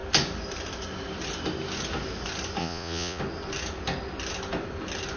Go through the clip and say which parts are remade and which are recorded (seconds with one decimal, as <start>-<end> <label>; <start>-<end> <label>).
0.0-2.6 recorded; 2.6-3.2 remade; 3.2-5.2 recorded